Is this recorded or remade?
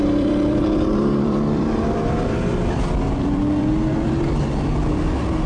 remade